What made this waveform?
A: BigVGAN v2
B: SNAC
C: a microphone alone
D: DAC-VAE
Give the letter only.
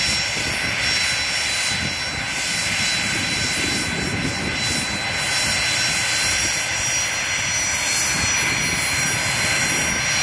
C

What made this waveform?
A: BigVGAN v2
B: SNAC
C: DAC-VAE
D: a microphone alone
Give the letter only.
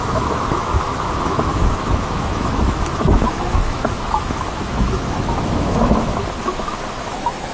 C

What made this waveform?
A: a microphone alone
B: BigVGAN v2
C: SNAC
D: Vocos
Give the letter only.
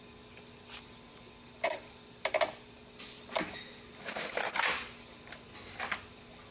A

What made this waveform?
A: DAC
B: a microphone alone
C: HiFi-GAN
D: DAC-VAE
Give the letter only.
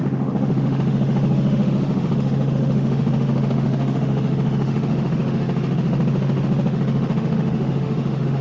D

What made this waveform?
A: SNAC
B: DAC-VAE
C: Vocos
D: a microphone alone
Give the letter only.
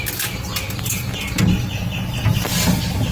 D